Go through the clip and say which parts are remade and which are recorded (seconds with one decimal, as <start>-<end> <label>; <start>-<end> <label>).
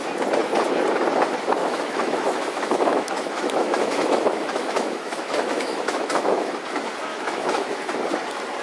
0.0-1.6 recorded; 1.6-6.5 remade; 6.5-7.1 recorded; 7.1-7.8 remade; 7.8-8.6 recorded